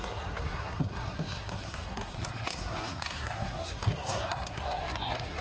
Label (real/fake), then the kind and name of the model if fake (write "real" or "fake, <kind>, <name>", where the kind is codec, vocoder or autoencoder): fake, codec, SNAC